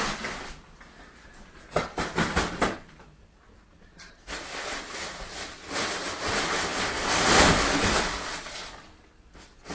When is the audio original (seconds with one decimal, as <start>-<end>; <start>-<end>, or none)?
0.0-9.7